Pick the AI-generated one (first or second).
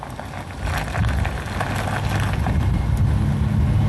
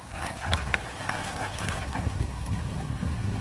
second